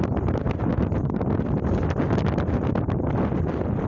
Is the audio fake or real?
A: real